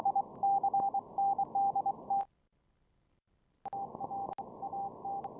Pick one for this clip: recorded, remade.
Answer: recorded